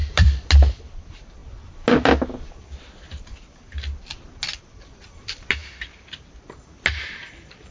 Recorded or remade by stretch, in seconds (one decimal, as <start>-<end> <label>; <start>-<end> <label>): 0.0-0.5 remade; 0.5-7.7 recorded